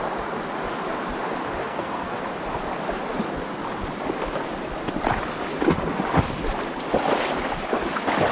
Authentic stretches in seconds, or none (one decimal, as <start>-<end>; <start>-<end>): 0.0-1.6; 2.2-8.3